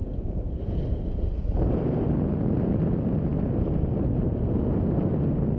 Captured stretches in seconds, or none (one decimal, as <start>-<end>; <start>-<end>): 0.0-5.6